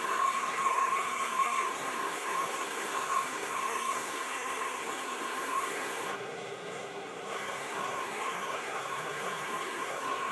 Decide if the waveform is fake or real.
fake